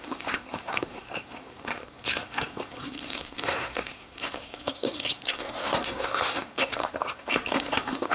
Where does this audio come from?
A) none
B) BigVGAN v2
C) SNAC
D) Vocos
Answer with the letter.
C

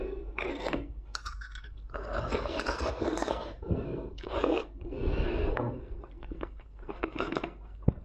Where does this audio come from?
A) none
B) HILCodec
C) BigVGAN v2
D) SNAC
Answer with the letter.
D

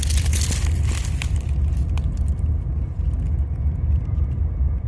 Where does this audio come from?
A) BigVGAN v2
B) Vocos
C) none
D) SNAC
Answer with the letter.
C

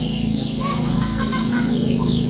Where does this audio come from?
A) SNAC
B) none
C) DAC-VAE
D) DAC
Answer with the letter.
A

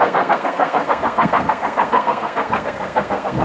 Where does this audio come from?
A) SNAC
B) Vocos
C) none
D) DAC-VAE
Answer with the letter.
A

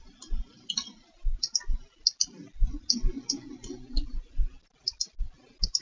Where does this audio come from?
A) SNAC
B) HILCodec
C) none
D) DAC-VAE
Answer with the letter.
C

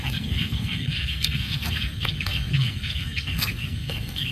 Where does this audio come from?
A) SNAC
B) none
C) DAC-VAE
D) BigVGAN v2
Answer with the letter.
A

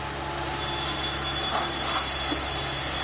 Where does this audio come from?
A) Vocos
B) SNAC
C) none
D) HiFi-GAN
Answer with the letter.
C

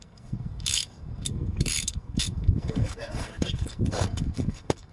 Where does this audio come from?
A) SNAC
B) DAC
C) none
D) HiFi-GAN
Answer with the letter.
A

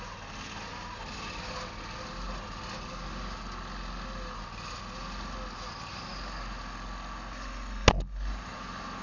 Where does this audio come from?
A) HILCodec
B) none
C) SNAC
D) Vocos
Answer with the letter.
B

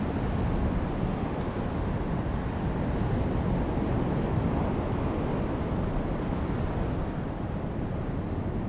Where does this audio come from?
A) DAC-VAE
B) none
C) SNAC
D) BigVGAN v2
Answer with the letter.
B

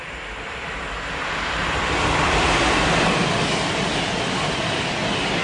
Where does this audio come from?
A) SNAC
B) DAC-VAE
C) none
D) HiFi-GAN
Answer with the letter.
C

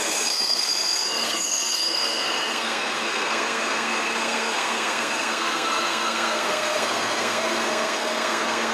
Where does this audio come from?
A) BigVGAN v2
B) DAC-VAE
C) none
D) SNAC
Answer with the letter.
D